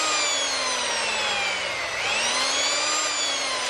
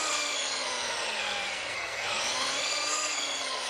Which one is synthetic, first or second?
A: second